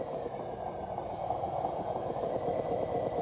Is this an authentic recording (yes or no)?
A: yes